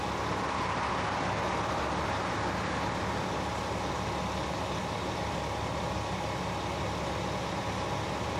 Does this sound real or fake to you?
real